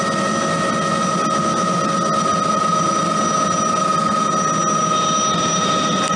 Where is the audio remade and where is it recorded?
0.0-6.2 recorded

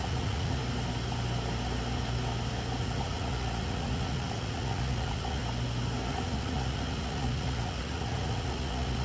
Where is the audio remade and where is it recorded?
0.0-0.6 remade; 0.6-2.8 recorded; 2.8-5.4 remade; 5.4-6.1 recorded; 6.1-9.0 remade